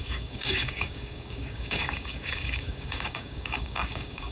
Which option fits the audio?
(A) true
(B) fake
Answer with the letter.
B